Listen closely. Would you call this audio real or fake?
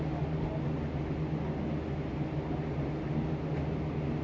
real